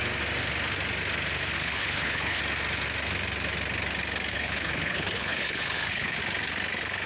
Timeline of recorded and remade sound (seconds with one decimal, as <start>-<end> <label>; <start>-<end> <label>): 0.0-1.6 recorded; 1.6-2.4 remade; 2.4-4.3 recorded; 4.3-6.2 remade; 6.2-7.1 recorded